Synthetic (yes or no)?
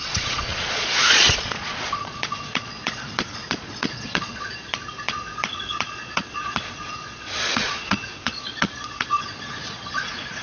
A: yes